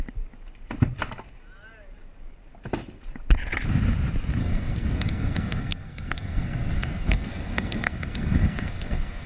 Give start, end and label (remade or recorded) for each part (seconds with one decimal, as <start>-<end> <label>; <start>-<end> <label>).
0.0-4.4 recorded; 4.4-9.3 remade